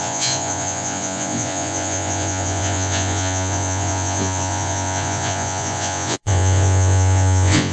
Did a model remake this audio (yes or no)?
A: yes